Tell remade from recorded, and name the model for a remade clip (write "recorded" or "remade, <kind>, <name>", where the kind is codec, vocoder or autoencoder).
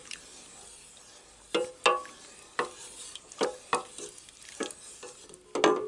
recorded